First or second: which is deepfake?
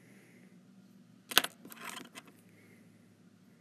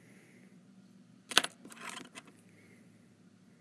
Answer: second